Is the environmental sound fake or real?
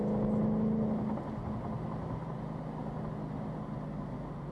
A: real